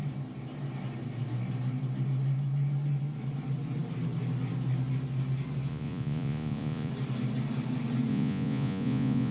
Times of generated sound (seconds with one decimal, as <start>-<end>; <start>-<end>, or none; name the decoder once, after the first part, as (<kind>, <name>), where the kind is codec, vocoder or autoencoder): 5.7-6.9 (vocoder, Vocos); 8.1-9.3